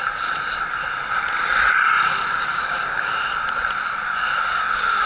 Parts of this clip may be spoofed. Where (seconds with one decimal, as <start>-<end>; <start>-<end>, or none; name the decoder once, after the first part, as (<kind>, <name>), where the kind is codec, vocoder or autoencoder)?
2.5-3.1 (codec, DAC)